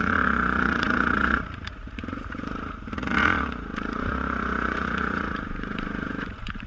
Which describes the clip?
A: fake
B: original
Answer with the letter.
A